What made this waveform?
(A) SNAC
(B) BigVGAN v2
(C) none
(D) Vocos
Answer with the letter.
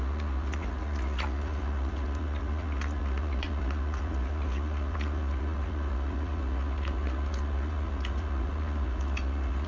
D